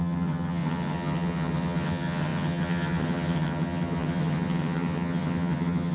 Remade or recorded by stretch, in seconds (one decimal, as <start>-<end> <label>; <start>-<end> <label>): 0.0-5.9 remade